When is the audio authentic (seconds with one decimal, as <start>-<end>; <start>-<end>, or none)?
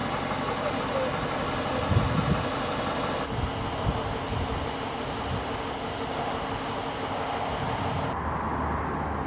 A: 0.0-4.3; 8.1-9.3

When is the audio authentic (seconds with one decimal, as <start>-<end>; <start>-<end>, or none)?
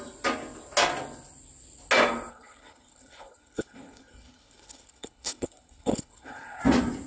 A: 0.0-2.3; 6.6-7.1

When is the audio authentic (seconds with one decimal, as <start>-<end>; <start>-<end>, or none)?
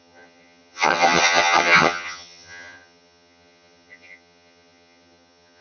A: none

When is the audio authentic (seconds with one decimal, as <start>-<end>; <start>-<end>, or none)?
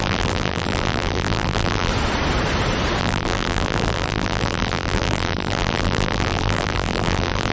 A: 1.9-3.0